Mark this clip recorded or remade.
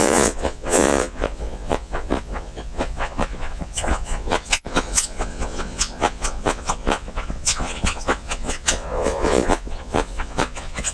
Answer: remade